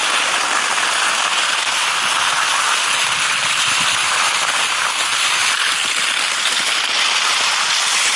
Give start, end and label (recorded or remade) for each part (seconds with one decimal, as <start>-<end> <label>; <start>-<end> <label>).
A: 0.0-8.2 recorded